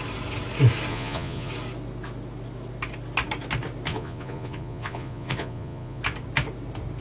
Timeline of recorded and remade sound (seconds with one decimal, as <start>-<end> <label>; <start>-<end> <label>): 0.0-0.9 recorded; 0.9-1.5 remade; 1.5-3.9 recorded; 3.9-6.0 remade; 6.0-7.0 recorded